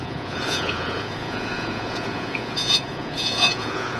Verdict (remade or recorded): remade